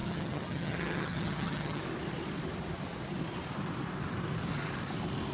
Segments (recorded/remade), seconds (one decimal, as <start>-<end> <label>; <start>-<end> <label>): 0.0-1.8 remade; 1.8-5.3 recorded